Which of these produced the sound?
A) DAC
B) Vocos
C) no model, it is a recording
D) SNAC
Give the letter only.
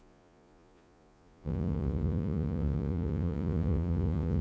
B